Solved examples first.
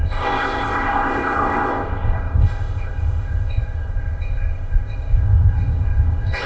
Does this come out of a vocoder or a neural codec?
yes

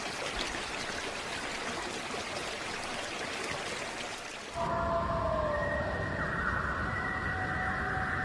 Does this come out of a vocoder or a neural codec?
no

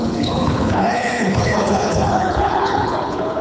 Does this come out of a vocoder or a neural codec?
yes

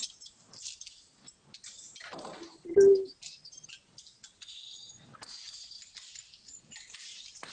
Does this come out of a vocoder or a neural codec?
no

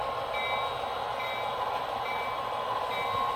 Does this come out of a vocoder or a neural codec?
no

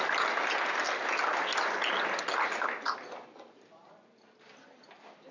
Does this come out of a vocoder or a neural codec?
no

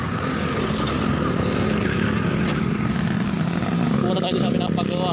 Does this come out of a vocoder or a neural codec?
no